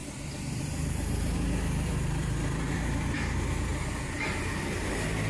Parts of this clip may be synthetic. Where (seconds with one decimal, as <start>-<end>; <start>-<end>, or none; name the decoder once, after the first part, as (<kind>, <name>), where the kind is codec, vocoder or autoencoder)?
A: 0.0-3.7 (vocoder, BigVGAN v2); 4.4-5.3